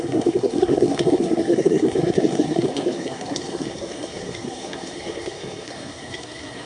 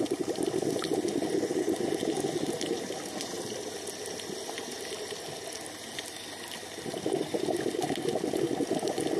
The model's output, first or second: first